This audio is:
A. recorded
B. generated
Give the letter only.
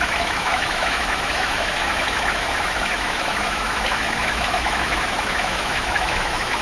B